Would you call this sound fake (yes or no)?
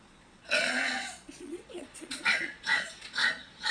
yes